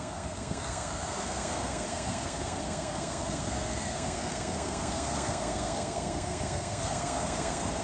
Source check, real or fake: fake